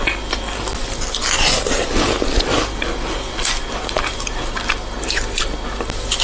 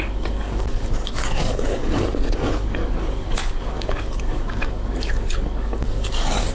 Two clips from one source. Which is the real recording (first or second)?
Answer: first